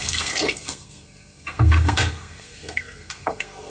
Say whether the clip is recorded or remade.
remade